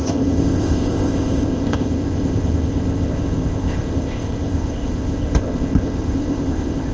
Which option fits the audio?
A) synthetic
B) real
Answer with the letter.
A